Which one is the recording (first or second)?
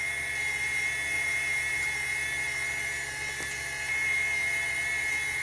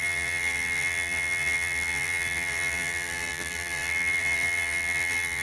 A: first